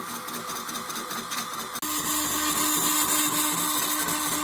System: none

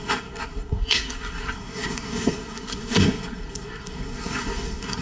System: codec, SNAC